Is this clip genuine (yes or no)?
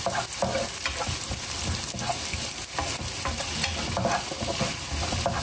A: yes